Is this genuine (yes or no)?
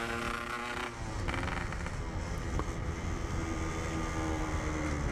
yes